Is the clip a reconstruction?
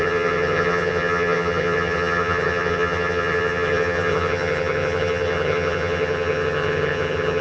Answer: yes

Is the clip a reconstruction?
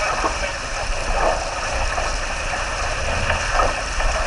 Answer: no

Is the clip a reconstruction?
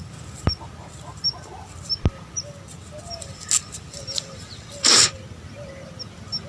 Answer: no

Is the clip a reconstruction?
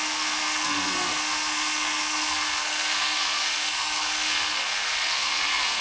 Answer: yes